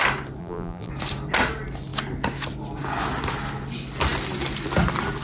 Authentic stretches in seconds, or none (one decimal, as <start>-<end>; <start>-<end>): 0.0-0.4; 0.9-5.2